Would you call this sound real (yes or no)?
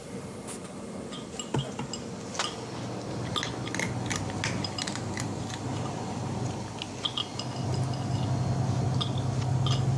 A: yes